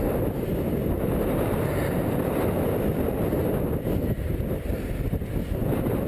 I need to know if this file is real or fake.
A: real